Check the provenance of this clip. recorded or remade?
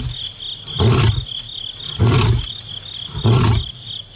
recorded